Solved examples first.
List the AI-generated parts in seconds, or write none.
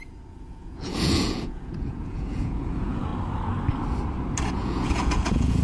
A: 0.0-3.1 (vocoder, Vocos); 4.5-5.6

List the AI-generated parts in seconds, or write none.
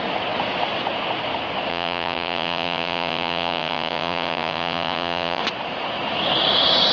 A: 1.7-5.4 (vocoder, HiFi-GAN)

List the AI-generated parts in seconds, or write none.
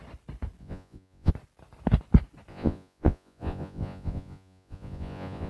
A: 0.6-1.3 (vocoder, Vocos); 2.5-5.5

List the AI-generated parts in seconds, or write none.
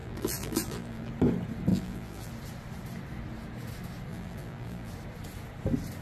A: 0.0-1.1 (vocoder, BigVGAN v2); 1.7-2.3; 4.1-4.9